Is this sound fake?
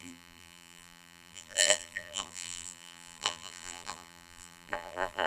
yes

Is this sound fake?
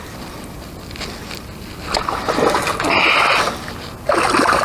no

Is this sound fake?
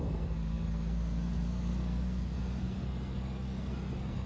yes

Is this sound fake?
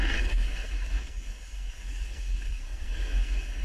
yes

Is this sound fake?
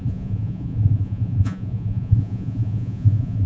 yes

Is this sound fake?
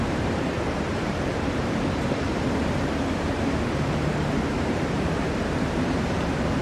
yes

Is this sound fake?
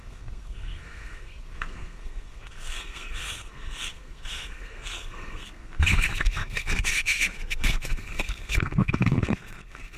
yes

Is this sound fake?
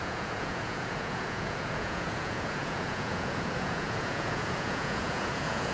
yes